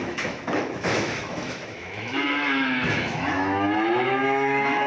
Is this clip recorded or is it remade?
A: remade